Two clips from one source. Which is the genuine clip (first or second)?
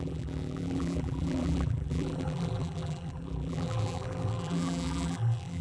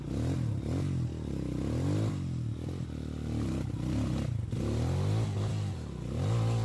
second